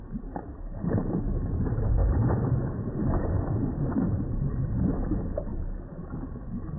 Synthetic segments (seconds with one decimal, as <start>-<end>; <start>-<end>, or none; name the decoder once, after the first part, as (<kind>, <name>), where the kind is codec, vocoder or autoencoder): none